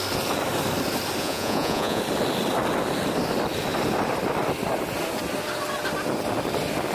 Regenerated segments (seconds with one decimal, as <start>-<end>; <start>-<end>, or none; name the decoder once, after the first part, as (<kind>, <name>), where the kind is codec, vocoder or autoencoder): 1.2-2.0 (vocoder, Vocos)